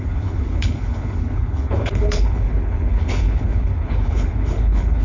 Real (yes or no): no